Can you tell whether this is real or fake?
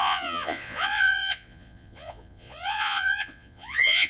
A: fake